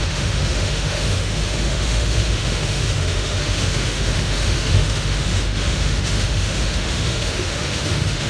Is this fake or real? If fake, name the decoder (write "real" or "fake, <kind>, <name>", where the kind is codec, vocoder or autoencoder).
fake, autoencoder, DAC-VAE